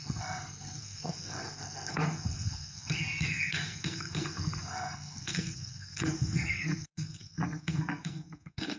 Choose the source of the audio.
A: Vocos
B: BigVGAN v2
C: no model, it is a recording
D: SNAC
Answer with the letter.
D